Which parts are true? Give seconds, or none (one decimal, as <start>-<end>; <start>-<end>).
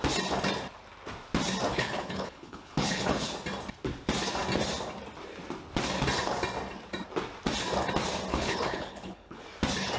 0.0-1.7; 3.3-8.3; 9.4-10.0